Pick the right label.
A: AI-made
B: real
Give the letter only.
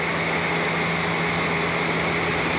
B